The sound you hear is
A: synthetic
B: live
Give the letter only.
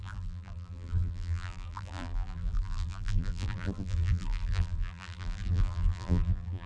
A